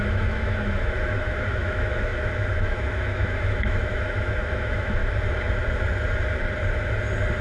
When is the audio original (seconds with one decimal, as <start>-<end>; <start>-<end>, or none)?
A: 5.0-7.4